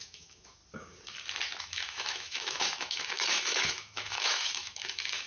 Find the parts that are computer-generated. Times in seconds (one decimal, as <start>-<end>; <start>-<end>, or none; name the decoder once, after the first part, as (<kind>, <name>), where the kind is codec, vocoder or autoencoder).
0.0-0.6 (autoencoder, DAC-VAE); 1.6-5.3